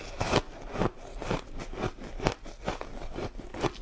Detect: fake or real real